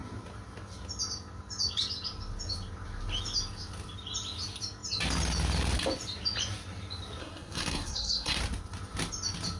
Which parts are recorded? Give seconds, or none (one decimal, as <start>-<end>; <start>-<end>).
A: 0.0-7.2; 8.4-9.6